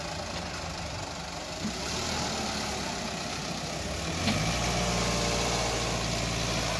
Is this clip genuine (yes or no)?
yes